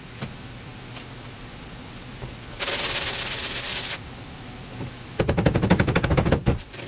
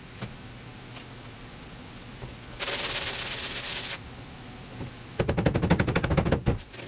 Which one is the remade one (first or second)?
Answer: first